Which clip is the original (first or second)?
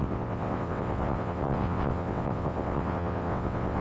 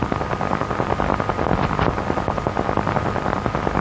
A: second